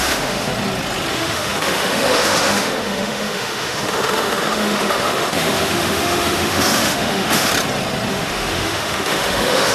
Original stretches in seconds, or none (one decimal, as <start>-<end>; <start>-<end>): 0.5-1.1; 7.5-8.1